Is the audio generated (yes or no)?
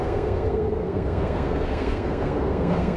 yes